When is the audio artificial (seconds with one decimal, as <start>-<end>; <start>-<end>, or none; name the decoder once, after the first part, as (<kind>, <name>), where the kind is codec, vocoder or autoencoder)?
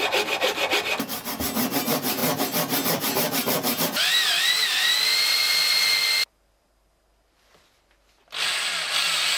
none